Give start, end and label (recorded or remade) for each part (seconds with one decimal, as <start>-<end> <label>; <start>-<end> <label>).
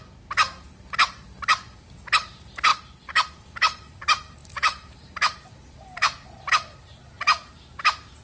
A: 0.0-2.7 recorded; 2.7-3.3 remade; 3.3-4.4 recorded; 4.4-6.5 remade; 6.5-8.2 recorded